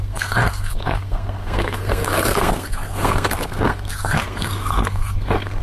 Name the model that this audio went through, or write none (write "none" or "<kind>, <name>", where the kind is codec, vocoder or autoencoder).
codec, SNAC